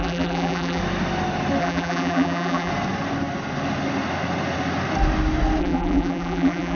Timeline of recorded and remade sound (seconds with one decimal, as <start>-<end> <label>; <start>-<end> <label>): 0.0-0.8 remade; 0.8-1.6 recorded; 1.6-2.7 remade; 2.7-5.6 recorded; 5.6-6.7 remade